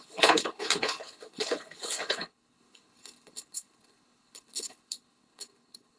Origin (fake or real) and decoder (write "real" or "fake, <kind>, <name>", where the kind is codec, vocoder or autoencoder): fake, codec, HILCodec